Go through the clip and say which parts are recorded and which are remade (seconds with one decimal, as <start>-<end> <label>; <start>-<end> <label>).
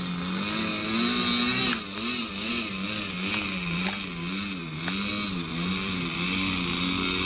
0.0-5.5 recorded; 5.5-6.1 remade; 6.1-7.3 recorded